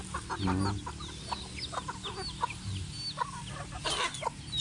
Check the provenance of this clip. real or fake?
real